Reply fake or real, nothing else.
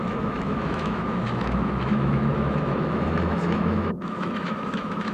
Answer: fake